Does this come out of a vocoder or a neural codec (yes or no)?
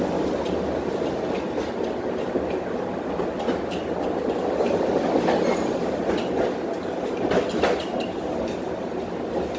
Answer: no